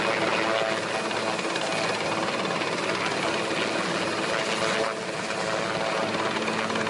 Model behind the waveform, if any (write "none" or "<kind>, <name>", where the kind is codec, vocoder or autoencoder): none